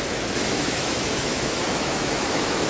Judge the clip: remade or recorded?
remade